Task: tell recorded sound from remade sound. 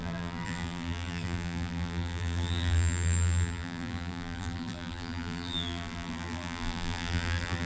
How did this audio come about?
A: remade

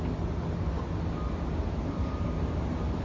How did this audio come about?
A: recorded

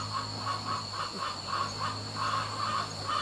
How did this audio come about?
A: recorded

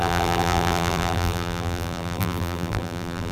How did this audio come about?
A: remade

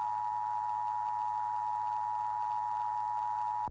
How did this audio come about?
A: recorded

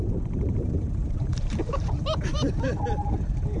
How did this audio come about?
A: remade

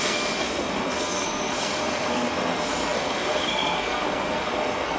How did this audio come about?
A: remade